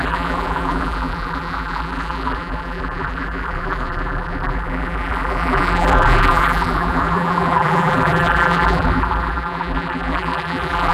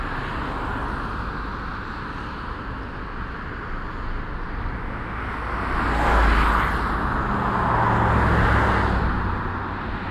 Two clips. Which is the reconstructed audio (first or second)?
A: first